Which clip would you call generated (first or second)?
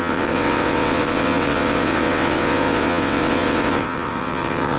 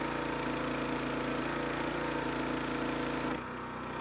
first